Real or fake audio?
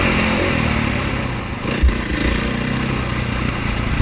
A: real